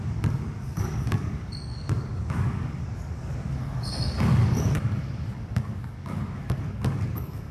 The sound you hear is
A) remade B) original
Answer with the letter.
A